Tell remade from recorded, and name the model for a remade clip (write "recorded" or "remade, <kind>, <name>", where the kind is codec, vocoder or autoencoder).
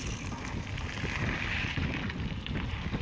recorded